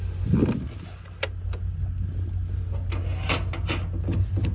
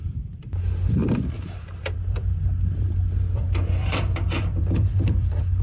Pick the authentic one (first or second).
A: first